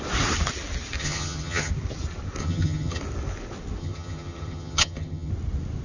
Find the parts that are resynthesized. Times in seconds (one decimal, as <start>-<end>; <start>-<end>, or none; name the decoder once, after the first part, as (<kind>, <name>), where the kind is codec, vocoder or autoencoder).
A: 1.0-1.7 (vocoder, HiFi-GAN); 2.4-3.0; 3.8-5.3